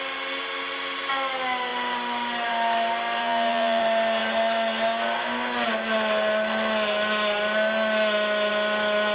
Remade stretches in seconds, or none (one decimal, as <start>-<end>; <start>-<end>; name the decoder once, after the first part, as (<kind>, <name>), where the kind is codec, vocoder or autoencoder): 3.2-3.8 (vocoder, BigVGAN v2)